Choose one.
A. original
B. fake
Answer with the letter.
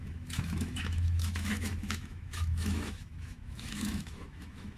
B